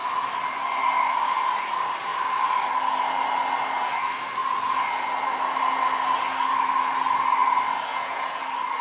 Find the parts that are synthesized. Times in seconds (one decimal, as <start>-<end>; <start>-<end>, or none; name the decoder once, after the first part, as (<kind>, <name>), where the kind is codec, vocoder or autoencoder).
7.9-8.4 (vocoder, Vocos)